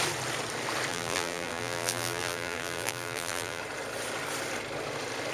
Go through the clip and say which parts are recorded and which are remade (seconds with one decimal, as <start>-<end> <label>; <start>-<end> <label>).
0.0-0.9 recorded; 0.9-3.6 remade; 3.6-5.3 recorded